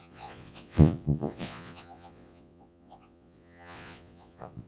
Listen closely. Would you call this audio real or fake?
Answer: fake